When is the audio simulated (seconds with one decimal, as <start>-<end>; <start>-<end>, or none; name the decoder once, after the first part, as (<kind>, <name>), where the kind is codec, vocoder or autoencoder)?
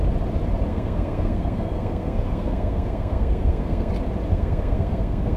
0.7-3.9 (codec, SNAC); 4.3-5.4